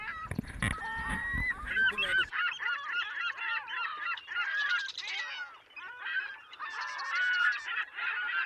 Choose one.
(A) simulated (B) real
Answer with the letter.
A